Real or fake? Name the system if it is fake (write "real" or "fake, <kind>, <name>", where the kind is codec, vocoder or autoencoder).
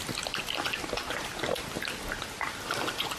real